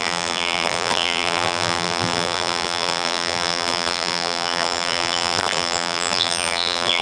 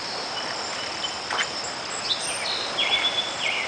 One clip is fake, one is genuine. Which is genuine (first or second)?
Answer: second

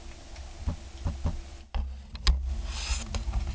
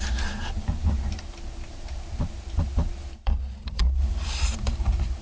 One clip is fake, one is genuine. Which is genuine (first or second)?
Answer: first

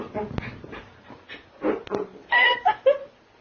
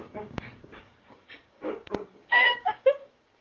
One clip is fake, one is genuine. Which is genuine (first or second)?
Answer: first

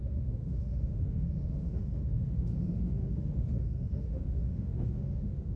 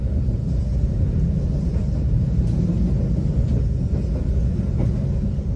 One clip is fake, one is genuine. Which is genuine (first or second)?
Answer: second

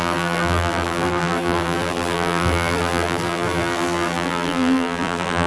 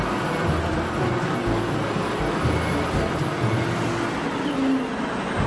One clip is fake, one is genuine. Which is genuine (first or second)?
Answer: second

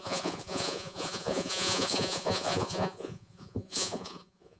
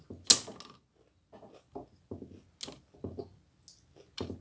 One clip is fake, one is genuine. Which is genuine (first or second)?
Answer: second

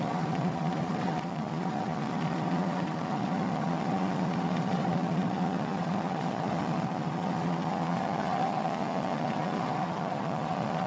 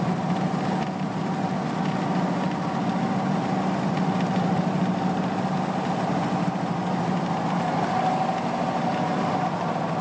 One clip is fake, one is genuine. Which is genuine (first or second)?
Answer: second